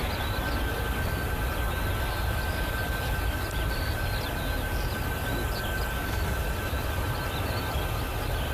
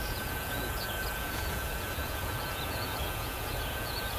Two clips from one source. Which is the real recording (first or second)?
first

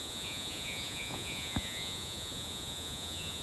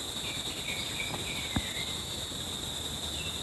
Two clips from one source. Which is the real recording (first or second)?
second